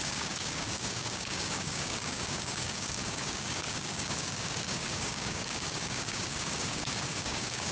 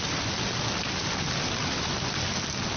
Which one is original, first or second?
second